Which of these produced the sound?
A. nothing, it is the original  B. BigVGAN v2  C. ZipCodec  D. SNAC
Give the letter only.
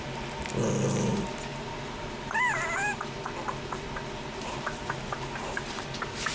A